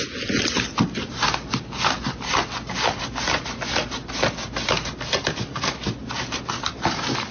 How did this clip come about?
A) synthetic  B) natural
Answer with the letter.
B